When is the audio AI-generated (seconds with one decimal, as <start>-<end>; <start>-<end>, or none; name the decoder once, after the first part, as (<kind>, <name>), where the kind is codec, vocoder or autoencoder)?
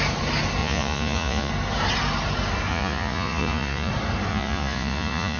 0.6-1.5 (vocoder, Vocos); 2.7-3.9; 4.3-5.4